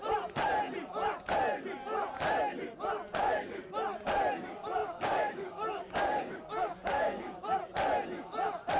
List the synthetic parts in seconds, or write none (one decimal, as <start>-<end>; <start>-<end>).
3.2-3.7; 4.8-7.6